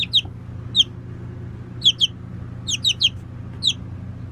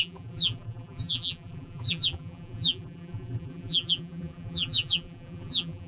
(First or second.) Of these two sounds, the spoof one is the second